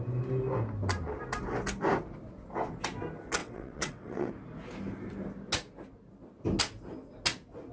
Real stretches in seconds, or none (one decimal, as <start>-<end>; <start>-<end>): 0.0-3.4; 4.3-7.7